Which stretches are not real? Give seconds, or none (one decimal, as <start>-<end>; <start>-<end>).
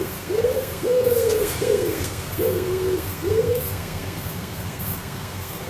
0.0-5.7